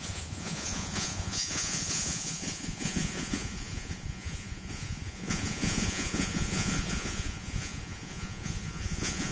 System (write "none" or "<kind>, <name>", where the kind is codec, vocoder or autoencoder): vocoder, Vocos